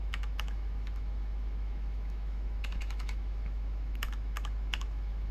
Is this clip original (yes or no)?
no